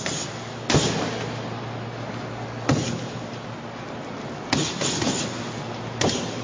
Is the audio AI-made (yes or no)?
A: no